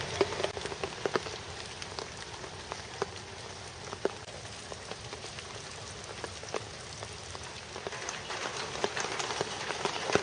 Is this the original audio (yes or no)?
yes